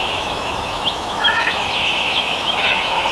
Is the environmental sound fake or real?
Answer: fake